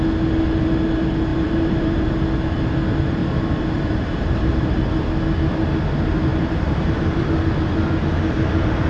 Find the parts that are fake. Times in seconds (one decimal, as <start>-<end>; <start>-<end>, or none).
1.3-2.1; 3.2-4.8; 6.3-7.2